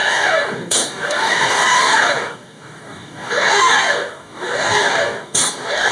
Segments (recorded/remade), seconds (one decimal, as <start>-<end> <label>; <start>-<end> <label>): 0.0-5.9 remade